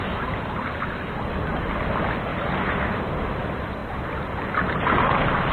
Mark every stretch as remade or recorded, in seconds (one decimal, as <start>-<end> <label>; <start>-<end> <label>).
0.0-2.3 recorded; 2.3-3.1 remade; 3.1-5.5 recorded